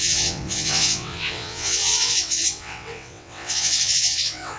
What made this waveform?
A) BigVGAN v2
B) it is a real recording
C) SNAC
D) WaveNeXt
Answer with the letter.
D